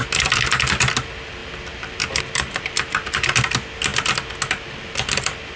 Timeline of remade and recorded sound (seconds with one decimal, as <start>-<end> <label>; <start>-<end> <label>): 0.0-5.6 recorded

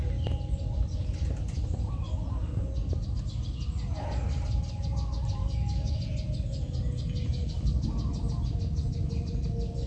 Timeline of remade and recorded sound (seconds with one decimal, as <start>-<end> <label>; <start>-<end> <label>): 0.0-5.4 recorded; 5.4-6.0 remade; 6.0-9.9 recorded

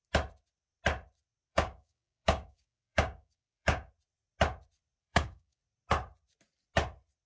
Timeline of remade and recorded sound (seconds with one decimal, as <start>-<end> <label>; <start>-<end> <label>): 0.0-1.5 recorded; 1.5-3.9 remade; 3.9-5.0 recorded; 5.0-5.6 remade; 5.6-7.3 recorded

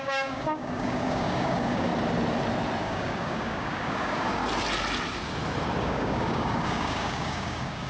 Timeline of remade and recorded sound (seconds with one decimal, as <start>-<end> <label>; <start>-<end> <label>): 0.0-1.9 remade; 1.9-2.8 recorded; 2.8-4.4 remade; 4.4-5.8 recorded; 5.8-7.9 remade

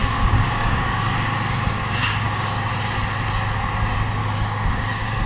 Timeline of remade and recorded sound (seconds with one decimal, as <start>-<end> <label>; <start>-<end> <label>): 0.0-1.1 remade; 1.1-1.8 recorded; 1.8-2.7 remade; 2.7-4.2 recorded; 4.2-5.3 remade

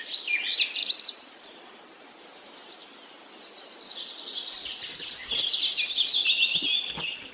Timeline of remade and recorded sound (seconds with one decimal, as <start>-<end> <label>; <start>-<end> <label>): 0.0-7.3 recorded